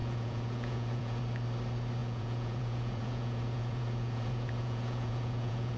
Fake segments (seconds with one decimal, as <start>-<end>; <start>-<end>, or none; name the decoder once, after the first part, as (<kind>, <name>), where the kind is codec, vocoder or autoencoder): 0.0-1.2 (vocoder, Vocos); 2.0-5.8